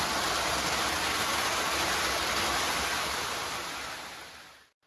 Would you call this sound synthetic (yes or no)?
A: no